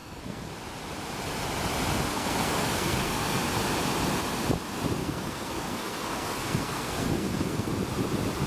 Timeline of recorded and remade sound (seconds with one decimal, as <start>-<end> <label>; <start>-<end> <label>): 0.0-0.5 remade; 0.5-2.1 recorded; 2.1-3.4 remade; 3.4-5.0 recorded; 5.0-7.7 remade; 7.7-8.5 recorded